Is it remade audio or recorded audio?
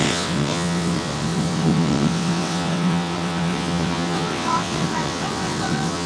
remade